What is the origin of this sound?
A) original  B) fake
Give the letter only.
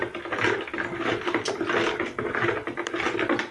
A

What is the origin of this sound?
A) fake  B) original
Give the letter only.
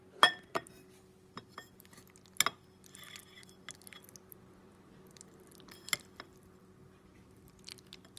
B